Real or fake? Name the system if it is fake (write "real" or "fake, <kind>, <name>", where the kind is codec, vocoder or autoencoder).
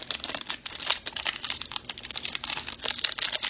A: real